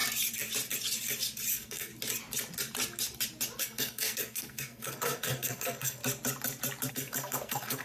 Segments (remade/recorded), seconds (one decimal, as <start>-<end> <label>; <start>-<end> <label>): 0.0-1.5 recorded; 1.5-1.9 remade; 1.9-3.6 recorded; 3.6-6.0 remade; 6.0-6.9 recorded; 6.9-7.8 remade